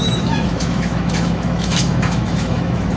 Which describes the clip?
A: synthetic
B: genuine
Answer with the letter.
A